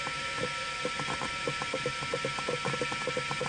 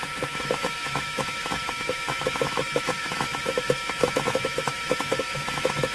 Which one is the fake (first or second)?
second